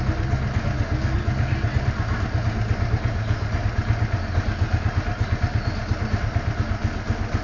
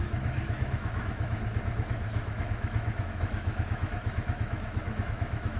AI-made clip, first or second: second